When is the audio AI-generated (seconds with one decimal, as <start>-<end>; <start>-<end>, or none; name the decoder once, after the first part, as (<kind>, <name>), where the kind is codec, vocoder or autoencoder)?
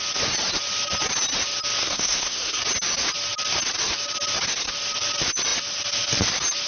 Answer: 1.8-2.6 (codec, SNAC)